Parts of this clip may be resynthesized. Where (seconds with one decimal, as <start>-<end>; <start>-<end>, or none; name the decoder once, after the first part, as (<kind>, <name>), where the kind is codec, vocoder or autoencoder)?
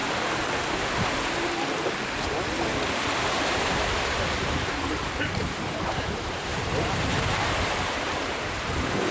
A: 3.2-9.1 (vocoder, BigVGAN v2)